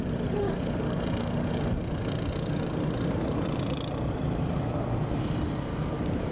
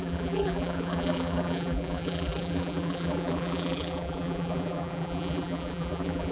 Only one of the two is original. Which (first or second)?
first